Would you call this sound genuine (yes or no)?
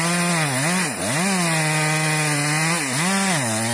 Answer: yes